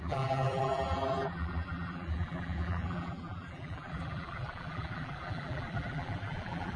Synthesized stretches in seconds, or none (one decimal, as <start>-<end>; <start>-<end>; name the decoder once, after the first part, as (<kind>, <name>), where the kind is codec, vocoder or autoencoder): 0.0-6.8 (vocoder, BigVGAN v2)